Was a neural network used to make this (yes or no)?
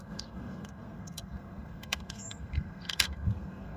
yes